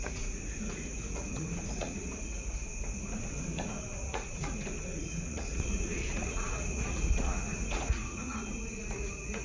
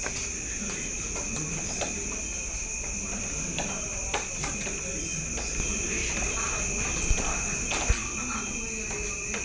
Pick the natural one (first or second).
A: second